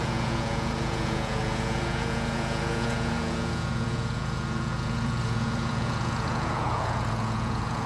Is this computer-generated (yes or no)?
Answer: yes